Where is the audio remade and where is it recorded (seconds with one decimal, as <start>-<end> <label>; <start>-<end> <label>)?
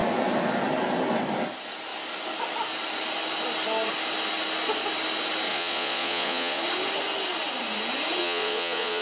0.0-5.5 recorded; 5.5-6.6 remade; 6.6-8.2 recorded; 8.2-9.0 remade